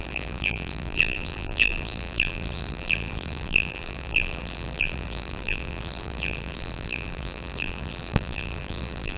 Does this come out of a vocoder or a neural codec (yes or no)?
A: yes